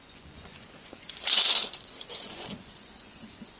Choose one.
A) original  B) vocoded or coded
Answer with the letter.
B